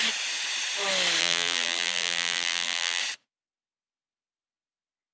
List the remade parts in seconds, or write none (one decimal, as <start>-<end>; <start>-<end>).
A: 1.2-3.0